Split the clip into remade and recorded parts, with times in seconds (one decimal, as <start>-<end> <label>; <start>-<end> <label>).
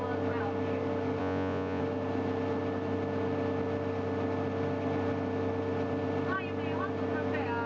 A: 0.0-1.2 recorded; 1.2-1.8 remade; 1.8-7.7 recorded